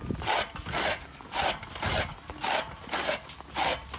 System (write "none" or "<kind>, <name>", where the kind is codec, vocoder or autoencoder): none